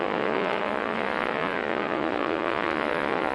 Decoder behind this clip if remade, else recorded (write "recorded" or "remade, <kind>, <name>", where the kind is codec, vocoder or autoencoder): remade, vocoder, Vocos